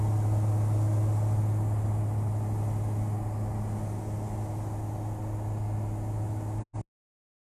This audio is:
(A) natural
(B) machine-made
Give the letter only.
A